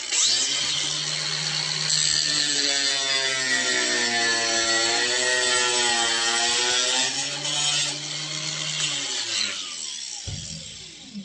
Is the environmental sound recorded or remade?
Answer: recorded